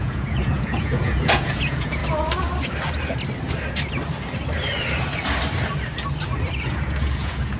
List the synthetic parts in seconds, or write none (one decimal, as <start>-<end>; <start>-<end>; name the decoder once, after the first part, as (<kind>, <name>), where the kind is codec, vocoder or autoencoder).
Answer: 0.0-2.0 (vocoder, Vocos); 6.6-7.6